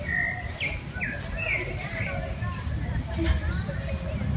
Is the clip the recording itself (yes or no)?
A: yes